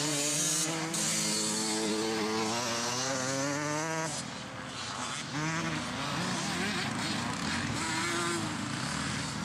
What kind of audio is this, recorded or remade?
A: recorded